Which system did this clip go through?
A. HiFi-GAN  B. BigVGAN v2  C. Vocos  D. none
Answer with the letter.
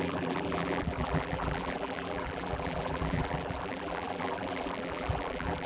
B